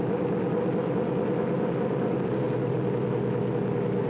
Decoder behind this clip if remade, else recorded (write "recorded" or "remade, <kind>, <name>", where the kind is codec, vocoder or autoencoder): recorded